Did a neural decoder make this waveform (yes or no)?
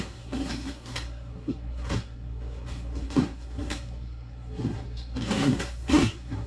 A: yes